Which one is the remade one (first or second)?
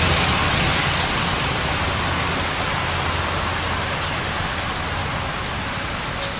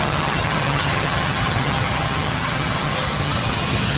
second